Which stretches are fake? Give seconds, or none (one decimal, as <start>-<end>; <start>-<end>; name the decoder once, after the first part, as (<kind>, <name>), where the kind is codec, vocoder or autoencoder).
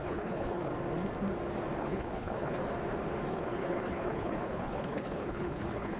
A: 0.0-0.7 (codec, HILCodec); 1.8-2.6; 3.3-6.0